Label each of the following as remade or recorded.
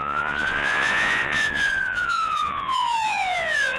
remade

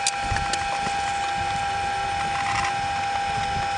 recorded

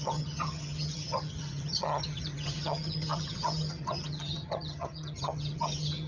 remade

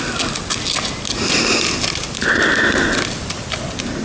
recorded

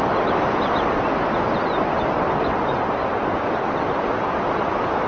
recorded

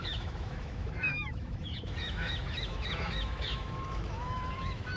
remade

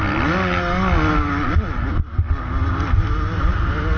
recorded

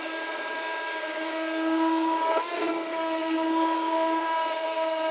remade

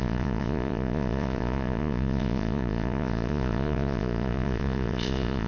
remade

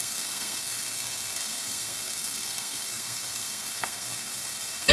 remade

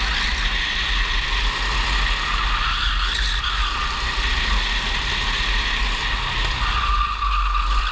recorded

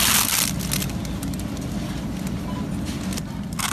recorded